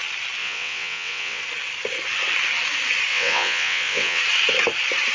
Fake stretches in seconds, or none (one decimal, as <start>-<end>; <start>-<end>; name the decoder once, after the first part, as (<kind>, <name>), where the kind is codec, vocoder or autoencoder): 0.4-1.4 (vocoder, WaveNeXt); 3.1-4.2